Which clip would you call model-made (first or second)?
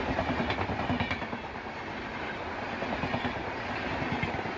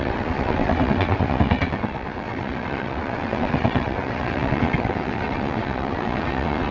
second